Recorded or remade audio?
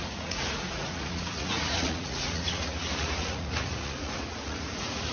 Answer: remade